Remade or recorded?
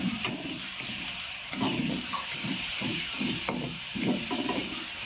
remade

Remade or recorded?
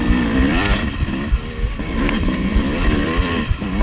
remade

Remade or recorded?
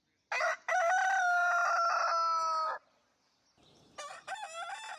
recorded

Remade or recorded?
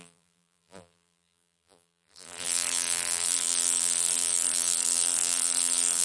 remade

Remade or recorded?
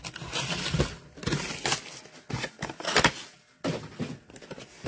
recorded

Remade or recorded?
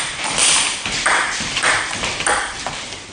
remade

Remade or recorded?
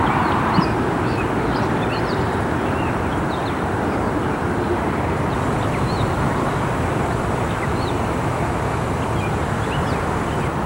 remade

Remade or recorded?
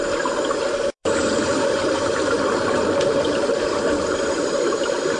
remade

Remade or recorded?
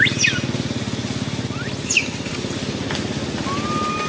recorded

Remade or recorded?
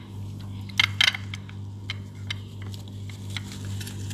recorded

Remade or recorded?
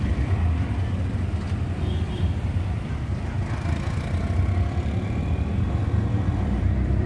remade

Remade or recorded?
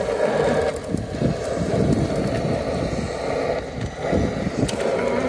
recorded